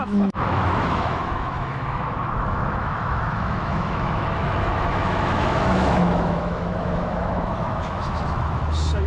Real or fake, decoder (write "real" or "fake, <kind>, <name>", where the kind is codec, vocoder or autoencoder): fake, autoencoder, DAC-VAE